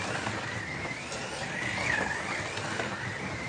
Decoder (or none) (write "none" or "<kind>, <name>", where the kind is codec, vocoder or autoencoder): none